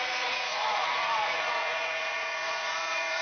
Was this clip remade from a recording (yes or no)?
yes